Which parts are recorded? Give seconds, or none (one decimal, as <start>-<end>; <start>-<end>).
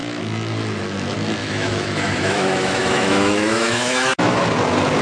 0.0-1.4; 4.4-5.0